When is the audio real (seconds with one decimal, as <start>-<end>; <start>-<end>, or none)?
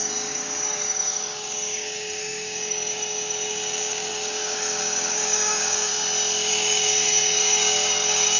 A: 5.9-6.5